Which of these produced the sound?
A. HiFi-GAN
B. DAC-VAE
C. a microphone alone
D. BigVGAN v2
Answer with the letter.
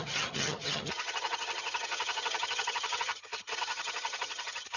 A